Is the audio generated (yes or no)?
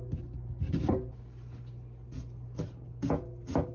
no